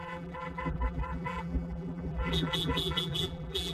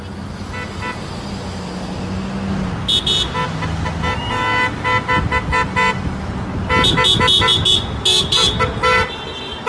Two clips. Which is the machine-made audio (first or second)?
first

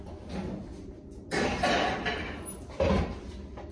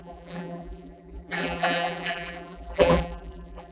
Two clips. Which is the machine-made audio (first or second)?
second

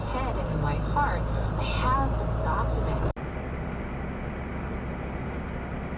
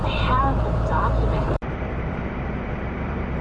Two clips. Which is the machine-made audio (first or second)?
second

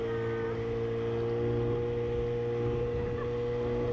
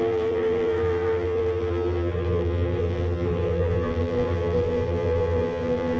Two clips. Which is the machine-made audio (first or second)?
second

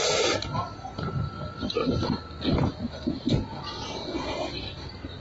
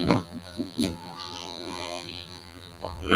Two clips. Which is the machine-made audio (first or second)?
second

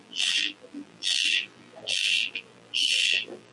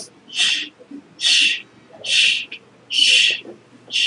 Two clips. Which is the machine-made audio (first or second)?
first